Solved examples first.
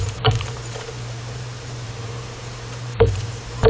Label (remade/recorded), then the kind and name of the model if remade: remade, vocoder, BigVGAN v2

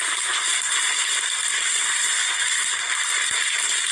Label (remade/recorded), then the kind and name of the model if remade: recorded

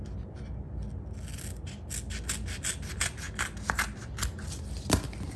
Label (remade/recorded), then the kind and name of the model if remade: recorded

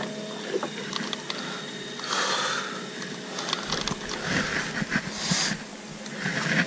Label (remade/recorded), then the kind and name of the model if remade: recorded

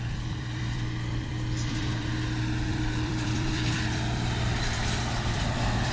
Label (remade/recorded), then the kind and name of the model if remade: remade, vocoder, BigVGAN v2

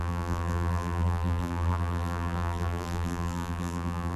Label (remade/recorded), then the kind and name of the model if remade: remade, vocoder, BigVGAN v2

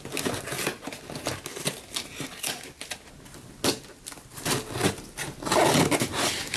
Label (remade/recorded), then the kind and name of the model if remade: recorded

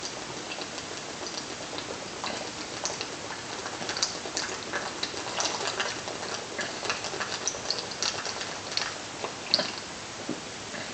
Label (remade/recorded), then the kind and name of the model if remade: recorded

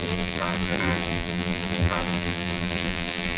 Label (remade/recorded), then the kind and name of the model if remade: remade, vocoder, BigVGAN v2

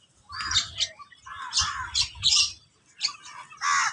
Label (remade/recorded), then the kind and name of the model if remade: recorded